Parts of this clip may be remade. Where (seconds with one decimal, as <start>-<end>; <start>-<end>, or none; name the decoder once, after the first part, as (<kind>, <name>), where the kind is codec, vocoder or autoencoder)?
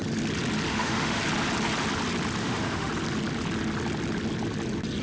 0.7-1.2 (autoencoder, DAC-VAE); 2.4-2.9